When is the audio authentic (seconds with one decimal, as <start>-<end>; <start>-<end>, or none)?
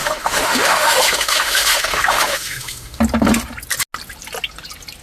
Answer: 3.0-5.0